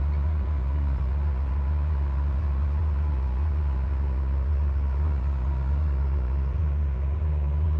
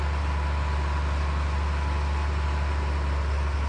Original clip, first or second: second